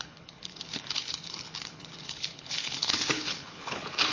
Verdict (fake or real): fake